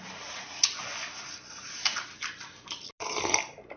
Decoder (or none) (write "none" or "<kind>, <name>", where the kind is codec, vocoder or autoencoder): none